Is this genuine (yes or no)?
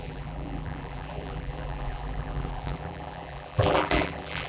no